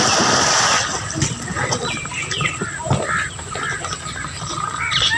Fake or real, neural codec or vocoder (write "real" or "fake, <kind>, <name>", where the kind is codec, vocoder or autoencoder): real